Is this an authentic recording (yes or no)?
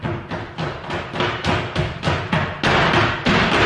yes